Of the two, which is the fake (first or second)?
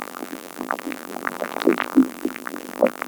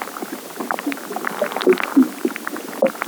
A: first